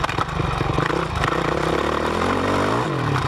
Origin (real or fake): real